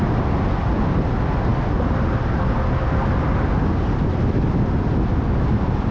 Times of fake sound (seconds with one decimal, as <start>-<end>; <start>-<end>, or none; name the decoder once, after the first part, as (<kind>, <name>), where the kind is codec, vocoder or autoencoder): none